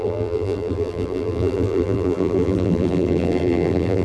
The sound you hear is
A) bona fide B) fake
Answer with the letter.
B